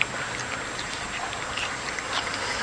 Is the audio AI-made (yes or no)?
no